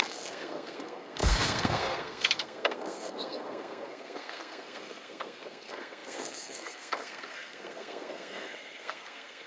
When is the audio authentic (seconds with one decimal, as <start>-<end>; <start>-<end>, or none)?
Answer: none